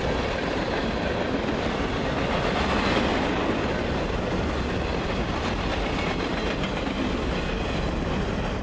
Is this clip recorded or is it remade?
recorded